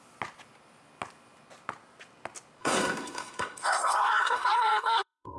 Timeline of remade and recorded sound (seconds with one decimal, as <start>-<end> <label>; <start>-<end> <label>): 0.0-2.6 recorded; 2.6-5.4 remade